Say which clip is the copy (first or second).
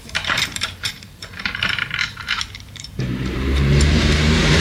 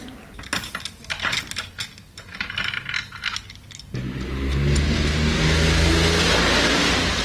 first